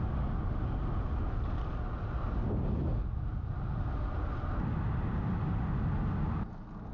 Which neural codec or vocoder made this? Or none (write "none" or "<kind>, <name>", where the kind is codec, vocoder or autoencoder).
none